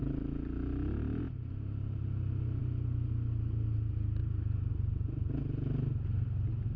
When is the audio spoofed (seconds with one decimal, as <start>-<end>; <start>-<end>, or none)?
1.0-2.6; 4.2-4.7